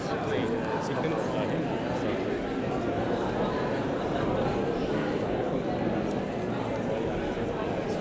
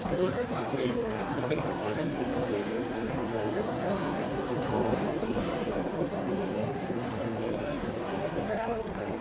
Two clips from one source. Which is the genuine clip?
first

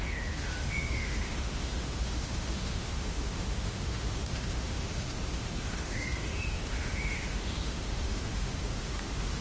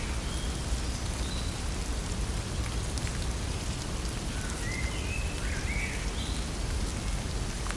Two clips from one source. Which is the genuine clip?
second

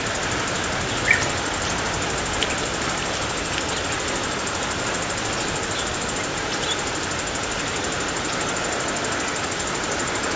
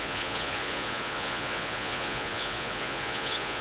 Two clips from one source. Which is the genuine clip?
first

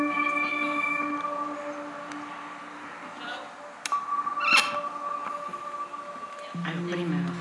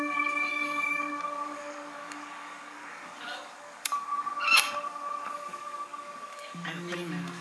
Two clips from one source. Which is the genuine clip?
first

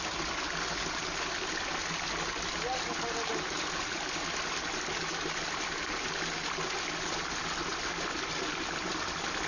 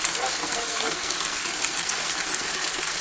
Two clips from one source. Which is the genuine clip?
first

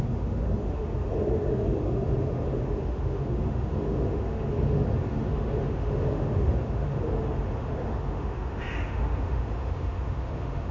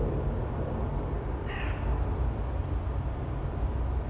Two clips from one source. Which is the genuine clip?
second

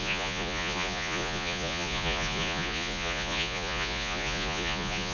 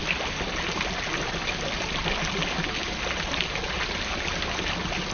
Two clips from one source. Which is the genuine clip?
second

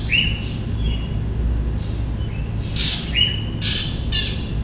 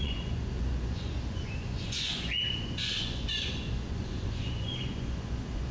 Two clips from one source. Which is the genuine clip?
first